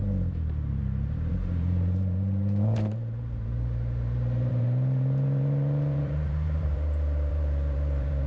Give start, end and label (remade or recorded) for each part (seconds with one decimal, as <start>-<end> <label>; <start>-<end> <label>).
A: 0.0-8.3 remade